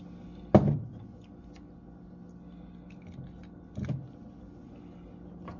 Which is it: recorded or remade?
recorded